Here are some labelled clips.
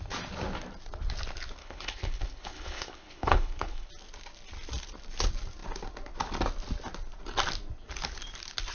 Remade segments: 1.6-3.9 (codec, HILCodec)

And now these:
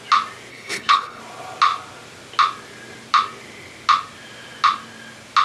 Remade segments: 0.5-1.2 (codec, HILCodec)

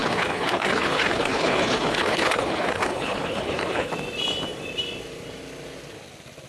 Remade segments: 0.0-3.9 (codec, HILCodec)